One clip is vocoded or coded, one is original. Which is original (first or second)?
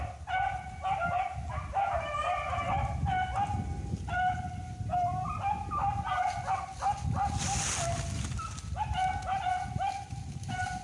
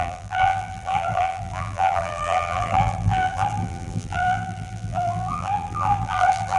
first